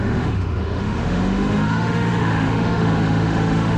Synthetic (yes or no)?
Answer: yes